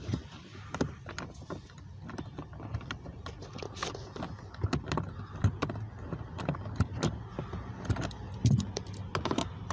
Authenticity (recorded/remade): recorded